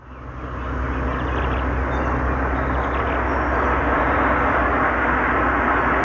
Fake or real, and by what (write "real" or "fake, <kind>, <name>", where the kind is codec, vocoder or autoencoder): real